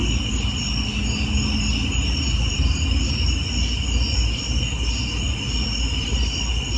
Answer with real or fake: real